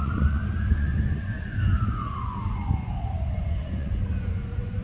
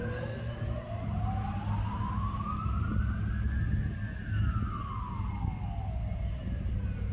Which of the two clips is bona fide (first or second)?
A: second